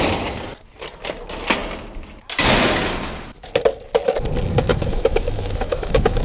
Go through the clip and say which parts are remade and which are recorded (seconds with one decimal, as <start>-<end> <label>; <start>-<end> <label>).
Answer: 0.0-4.7 recorded; 4.7-6.2 remade